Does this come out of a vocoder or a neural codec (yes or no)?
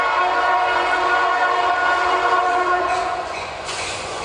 yes